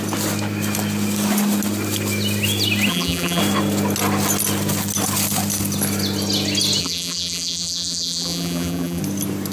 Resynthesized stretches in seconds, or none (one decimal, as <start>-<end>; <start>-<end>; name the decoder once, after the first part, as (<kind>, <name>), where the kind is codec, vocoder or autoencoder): 2.9-3.4 (vocoder, BigVGAN v2); 6.8-9.0